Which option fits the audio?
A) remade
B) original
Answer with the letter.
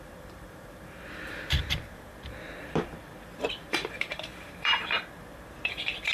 A